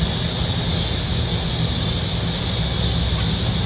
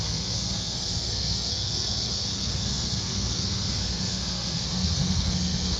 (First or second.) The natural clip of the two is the first